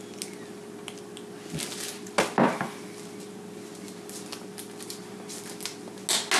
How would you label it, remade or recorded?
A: recorded